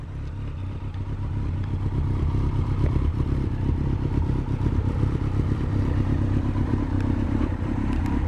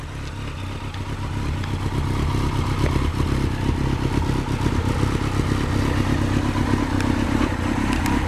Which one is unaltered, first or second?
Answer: second